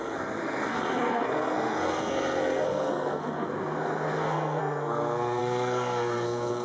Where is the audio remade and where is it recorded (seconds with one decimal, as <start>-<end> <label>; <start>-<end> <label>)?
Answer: 0.0-6.6 remade